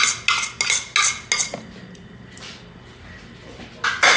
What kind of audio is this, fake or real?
real